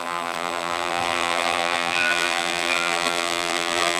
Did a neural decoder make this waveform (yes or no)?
yes